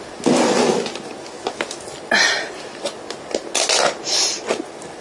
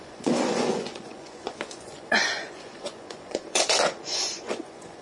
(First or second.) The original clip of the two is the first